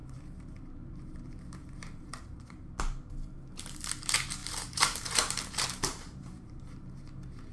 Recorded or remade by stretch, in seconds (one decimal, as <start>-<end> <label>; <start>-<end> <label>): 0.0-2.7 remade; 2.7-4.4 recorded; 4.4-6.6 remade; 6.6-7.5 recorded